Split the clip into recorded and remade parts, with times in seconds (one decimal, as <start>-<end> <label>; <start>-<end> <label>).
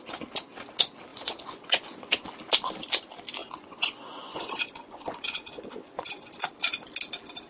0.0-1.1 recorded; 1.1-2.1 remade; 2.1-3.4 recorded; 3.4-6.3 remade; 6.3-7.5 recorded